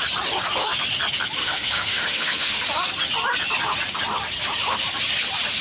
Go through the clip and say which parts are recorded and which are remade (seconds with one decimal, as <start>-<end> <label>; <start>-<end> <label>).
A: 0.0-1.4 recorded; 1.4-2.6 remade; 2.6-5.6 recorded